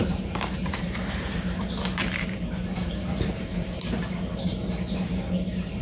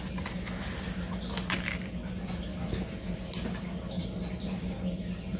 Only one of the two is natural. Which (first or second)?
second